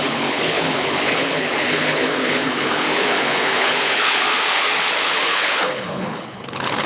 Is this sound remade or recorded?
remade